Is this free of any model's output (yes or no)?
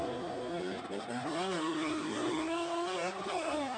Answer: no